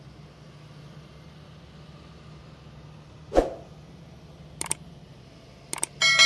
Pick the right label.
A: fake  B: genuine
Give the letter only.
B